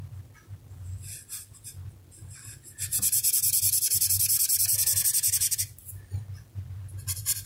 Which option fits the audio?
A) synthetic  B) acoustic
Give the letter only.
B